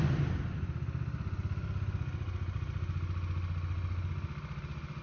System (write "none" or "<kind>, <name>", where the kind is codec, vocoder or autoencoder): none